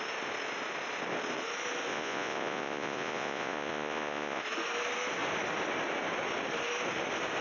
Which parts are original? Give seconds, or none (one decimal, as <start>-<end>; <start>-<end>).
0.0-1.9; 4.4-7.4